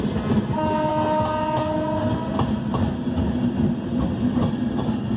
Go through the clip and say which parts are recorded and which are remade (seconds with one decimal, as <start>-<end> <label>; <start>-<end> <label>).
0.0-5.2 recorded